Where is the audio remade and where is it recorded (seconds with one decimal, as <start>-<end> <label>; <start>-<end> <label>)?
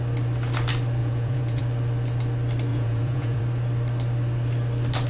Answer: 0.0-1.0 recorded; 1.0-1.6 remade; 1.6-2.7 recorded; 2.7-3.4 remade; 3.4-5.1 recorded